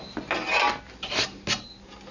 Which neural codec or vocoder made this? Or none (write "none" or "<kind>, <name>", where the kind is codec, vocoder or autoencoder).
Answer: none